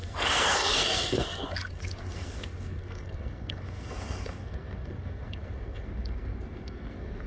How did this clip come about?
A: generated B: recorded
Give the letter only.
A